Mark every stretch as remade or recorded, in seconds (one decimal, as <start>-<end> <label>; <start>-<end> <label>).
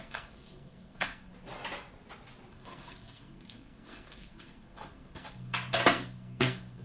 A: 0.0-1.3 remade; 1.3-2.5 recorded; 2.5-6.8 remade